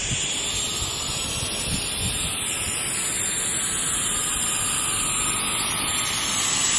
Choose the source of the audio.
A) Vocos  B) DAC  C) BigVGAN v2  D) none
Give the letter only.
D